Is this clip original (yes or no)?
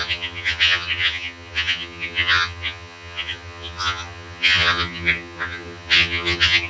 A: no